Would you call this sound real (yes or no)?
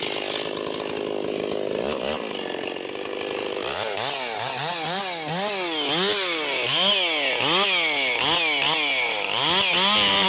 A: yes